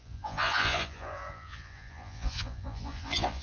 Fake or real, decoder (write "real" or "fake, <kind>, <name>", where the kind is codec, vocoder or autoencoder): fake, vocoder, Vocos